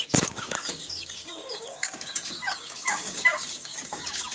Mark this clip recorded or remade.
remade